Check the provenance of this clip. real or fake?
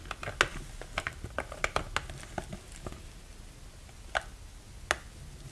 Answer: real